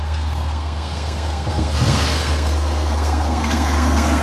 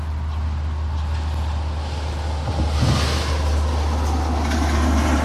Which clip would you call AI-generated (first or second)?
first